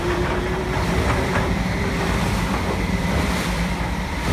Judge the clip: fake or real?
fake